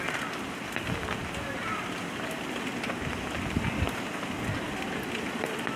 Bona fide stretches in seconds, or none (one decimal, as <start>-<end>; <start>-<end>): 0.0-5.8